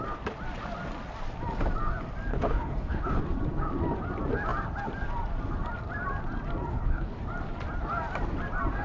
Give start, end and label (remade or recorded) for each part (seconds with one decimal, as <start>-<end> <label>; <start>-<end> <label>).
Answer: 0.0-2.3 recorded; 2.3-3.2 remade; 3.2-6.7 recorded; 6.7-7.2 remade; 7.2-8.8 recorded

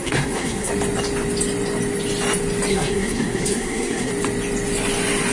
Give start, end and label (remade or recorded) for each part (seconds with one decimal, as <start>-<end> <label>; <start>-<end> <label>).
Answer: 0.0-0.7 remade; 0.7-2.7 recorded; 2.7-4.1 remade; 4.1-5.3 recorded

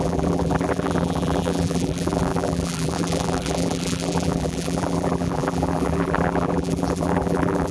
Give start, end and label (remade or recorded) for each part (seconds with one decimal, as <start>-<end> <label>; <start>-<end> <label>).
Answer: 0.0-7.7 remade

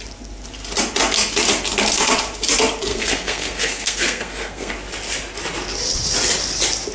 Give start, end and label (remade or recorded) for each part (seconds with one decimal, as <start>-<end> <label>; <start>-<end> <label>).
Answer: 0.0-2.9 recorded; 2.9-4.7 remade; 4.7-6.9 recorded